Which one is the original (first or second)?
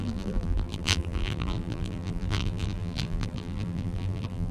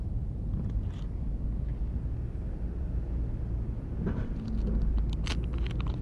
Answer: second